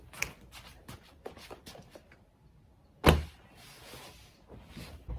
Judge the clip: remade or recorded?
recorded